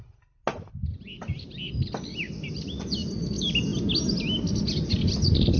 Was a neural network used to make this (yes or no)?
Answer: no